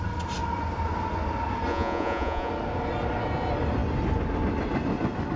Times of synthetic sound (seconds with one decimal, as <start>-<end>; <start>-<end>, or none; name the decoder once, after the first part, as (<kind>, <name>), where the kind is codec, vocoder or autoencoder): 1.7-2.5 (vocoder, Vocos)